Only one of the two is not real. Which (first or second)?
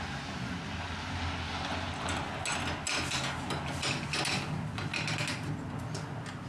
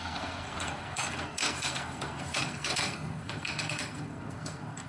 second